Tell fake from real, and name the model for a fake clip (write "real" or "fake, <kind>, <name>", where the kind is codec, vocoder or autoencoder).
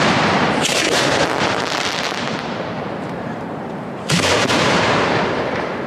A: fake, vocoder, BigVGAN v2